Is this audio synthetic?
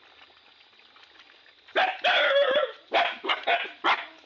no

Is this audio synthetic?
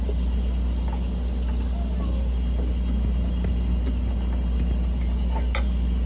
no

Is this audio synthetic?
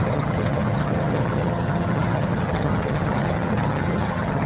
yes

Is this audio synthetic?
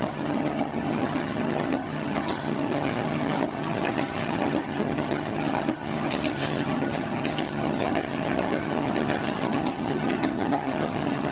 yes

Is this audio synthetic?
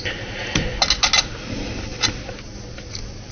no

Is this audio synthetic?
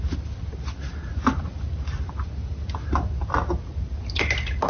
no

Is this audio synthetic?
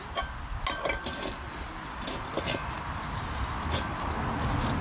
no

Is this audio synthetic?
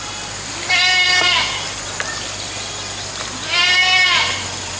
no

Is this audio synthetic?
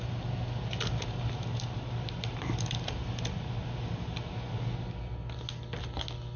no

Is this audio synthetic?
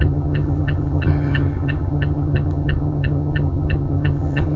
yes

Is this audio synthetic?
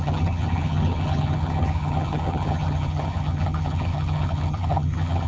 yes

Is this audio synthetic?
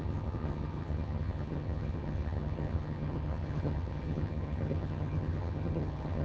yes